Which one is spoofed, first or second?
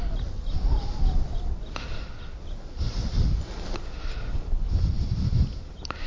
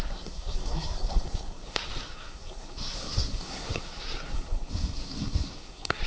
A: second